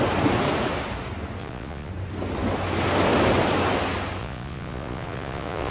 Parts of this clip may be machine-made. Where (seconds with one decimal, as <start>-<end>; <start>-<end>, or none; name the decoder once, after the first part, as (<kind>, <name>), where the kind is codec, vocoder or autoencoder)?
1.4-1.9 (vocoder, Vocos); 4.2-5.7